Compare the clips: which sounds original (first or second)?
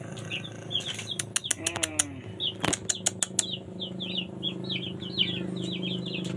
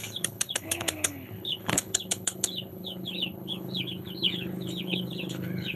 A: first